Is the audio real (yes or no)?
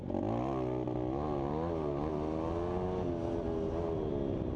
yes